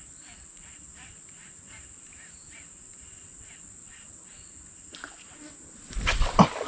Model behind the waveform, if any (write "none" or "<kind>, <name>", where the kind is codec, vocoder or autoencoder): none